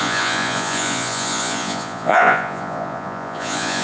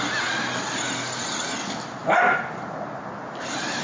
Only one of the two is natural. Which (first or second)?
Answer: second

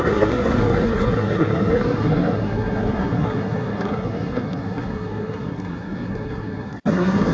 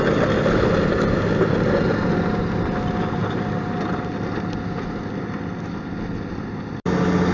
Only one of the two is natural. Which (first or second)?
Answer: second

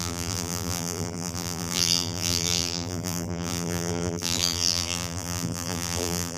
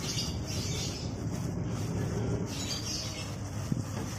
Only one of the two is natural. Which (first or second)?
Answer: second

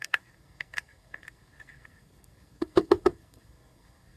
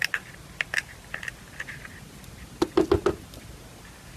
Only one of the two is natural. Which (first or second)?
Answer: second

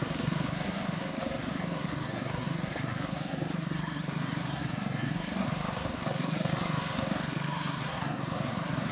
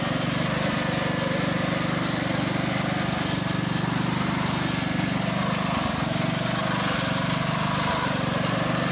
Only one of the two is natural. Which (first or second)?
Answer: second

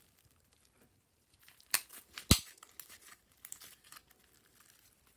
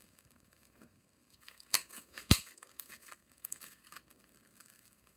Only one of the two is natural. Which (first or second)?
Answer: first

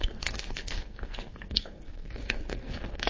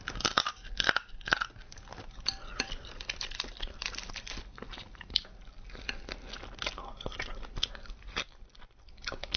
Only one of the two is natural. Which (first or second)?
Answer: second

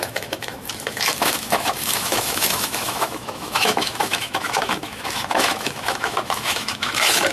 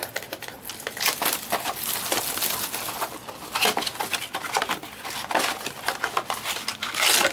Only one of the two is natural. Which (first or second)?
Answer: second